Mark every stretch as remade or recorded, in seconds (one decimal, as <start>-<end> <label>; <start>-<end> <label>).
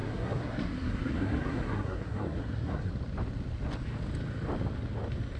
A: 0.0-2.9 remade; 2.9-5.4 recorded